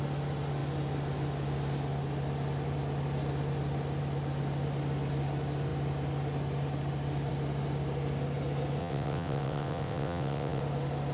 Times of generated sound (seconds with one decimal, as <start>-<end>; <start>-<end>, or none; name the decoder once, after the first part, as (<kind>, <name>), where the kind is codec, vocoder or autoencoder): 8.8-10.6 (vocoder, WaveNeXt)